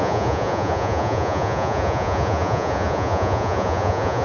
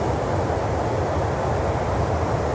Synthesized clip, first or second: first